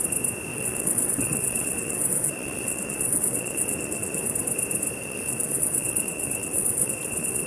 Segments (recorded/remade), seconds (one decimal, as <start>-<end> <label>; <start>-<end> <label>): 0.0-0.5 recorded; 0.5-4.3 remade; 4.3-5.0 recorded; 5.0-7.5 remade